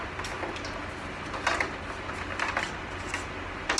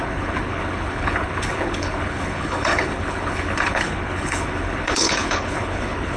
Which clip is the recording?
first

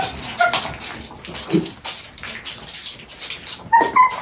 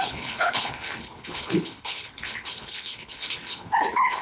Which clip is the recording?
first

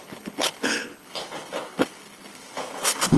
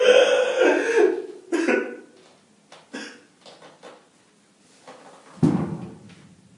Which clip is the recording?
second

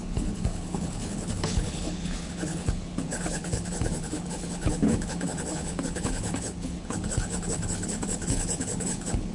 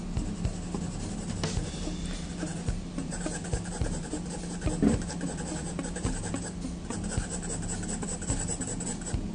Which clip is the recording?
second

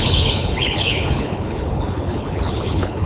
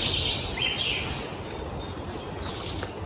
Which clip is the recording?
second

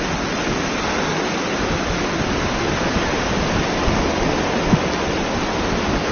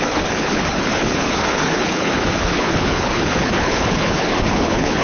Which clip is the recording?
first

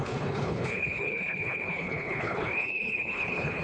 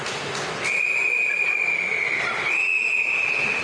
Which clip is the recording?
second